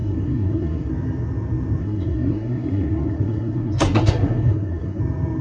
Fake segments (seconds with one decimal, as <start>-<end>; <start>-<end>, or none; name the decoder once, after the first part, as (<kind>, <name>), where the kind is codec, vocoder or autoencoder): 0.0-0.9 (codec, SNAC); 1.8-5.0